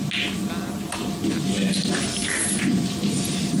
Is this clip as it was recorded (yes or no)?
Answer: yes